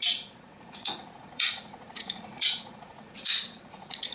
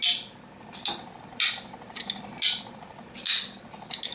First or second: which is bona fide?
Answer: second